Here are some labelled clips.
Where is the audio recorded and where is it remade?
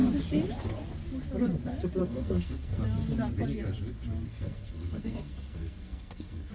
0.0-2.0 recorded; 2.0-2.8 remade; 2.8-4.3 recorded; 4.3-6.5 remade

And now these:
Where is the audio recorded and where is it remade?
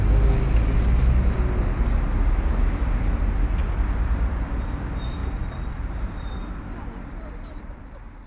0.0-8.3 recorded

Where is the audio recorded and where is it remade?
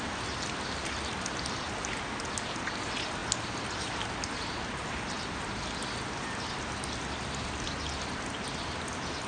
0.0-9.3 recorded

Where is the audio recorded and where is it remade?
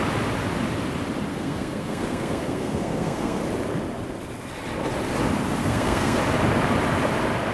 0.0-1.3 recorded; 1.3-3.4 remade; 3.4-5.6 recorded; 5.6-6.2 remade; 6.2-7.5 recorded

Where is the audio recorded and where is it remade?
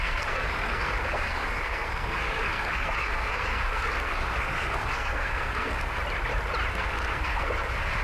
0.0-6.0 remade; 6.0-6.7 recorded; 6.7-8.0 remade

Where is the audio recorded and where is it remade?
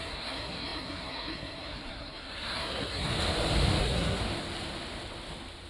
0.0-3.1 remade; 3.1-3.8 recorded; 3.8-4.2 remade; 4.2-5.7 recorded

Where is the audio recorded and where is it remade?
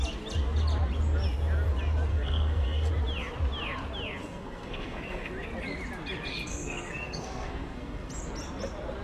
0.0-2.1 recorded; 2.1-2.9 remade; 2.9-4.2 recorded; 4.2-5.3 remade; 5.3-6.3 recorded; 6.3-8.1 remade; 8.1-9.0 recorded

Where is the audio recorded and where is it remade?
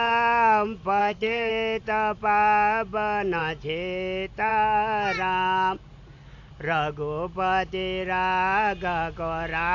0.0-1.0 recorded; 1.0-1.5 remade; 1.5-9.7 recorded